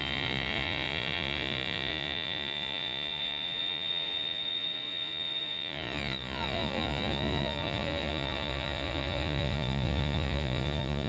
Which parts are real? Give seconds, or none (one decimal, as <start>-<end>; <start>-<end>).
none